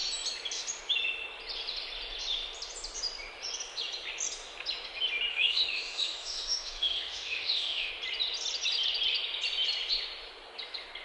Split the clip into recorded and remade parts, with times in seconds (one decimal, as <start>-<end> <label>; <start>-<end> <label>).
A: 0.0-5.3 recorded; 5.3-7.9 remade; 7.9-11.0 recorded